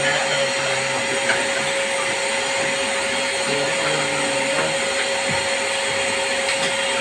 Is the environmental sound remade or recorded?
recorded